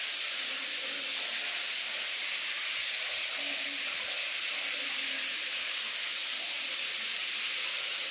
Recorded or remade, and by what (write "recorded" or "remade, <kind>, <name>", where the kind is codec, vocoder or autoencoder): recorded